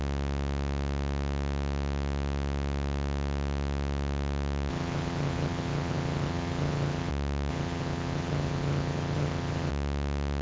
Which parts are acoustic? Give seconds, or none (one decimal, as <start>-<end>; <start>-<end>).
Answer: 0.0-4.7; 7.1-7.5; 9.7-10.4